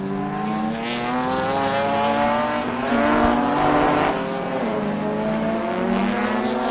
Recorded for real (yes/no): yes